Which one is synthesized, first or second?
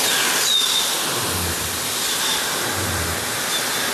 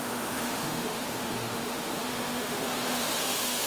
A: second